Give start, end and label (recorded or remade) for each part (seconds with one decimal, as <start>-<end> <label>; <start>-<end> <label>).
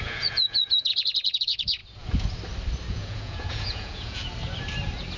0.0-1.8 remade; 1.8-2.9 recorded; 2.9-4.2 remade; 4.2-5.2 recorded